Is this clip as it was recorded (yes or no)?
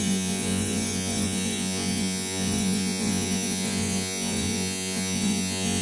no